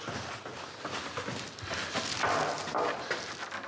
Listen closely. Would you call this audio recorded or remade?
recorded